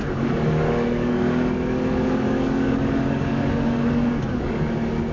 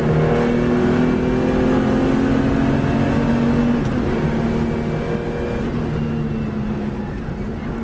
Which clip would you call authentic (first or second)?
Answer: second